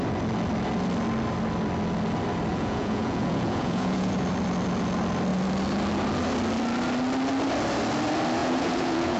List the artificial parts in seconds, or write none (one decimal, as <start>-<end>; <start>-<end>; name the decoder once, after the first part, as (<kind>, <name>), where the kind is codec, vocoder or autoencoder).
2.5-4.1 (vocoder, Vocos); 8.4-9.2